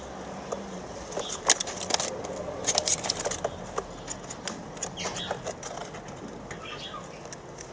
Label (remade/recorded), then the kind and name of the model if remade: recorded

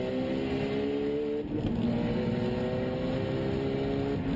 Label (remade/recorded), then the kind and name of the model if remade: recorded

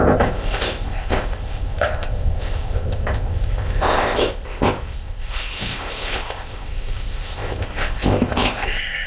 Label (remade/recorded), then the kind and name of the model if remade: remade, codec, ZipCodec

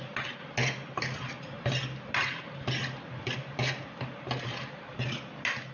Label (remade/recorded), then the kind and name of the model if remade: recorded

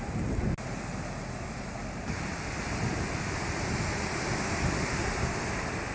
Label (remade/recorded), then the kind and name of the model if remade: recorded